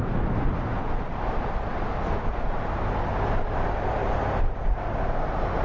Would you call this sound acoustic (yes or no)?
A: yes